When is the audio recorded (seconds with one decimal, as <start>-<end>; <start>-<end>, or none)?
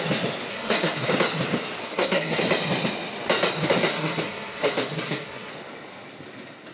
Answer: 0.0-0.5; 1.1-1.8; 2.4-3.9; 5.5-6.7